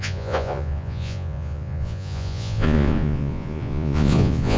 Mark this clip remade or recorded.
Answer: remade